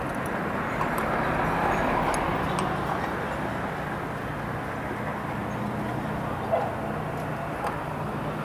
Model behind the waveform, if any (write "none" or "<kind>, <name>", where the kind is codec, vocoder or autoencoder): none